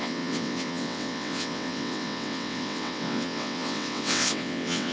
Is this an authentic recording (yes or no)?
no